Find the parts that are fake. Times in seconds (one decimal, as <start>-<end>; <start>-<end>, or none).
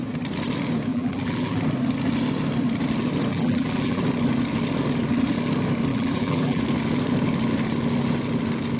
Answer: 0.9-1.6; 3.3-4.0; 5.9-6.6